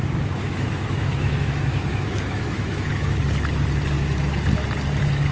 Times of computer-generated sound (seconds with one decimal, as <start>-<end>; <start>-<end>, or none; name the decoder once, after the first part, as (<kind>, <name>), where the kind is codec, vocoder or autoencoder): 0.0-3.2 (autoencoder, DAC-VAE)